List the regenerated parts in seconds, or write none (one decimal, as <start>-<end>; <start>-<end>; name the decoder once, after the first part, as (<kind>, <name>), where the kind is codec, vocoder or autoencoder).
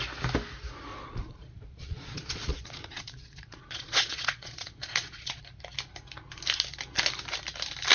0.9-5.4 (vocoder, Vocos)